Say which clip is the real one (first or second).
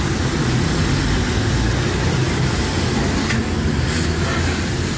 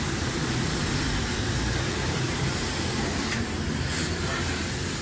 first